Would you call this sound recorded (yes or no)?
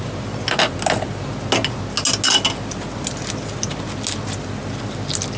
yes